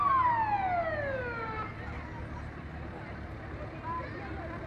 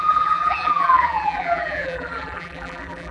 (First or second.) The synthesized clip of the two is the second